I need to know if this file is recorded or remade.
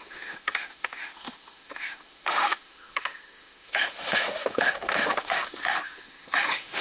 remade